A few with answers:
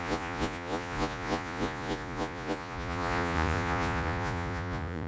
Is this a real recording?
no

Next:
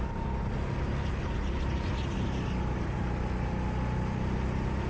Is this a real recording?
yes